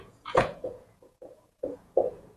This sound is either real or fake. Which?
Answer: fake